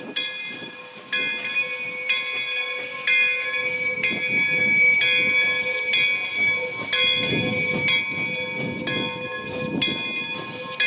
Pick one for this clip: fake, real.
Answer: real